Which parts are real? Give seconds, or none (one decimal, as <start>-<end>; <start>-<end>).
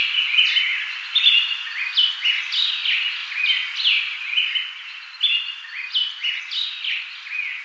0.0-0.7; 2.1-7.6